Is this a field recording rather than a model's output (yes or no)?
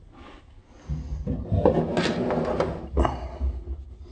yes